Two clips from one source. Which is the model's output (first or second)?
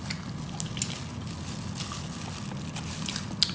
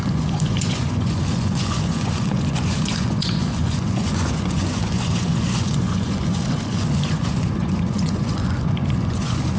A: second